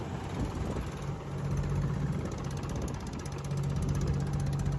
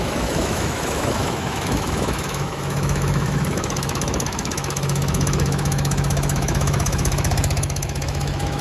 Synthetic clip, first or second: second